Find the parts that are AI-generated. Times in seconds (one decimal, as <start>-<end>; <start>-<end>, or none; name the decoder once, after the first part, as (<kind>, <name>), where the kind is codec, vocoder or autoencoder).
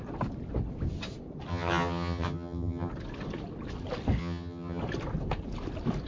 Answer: 1.5-2.9 (vocoder, HiFi-GAN); 4.2-4.8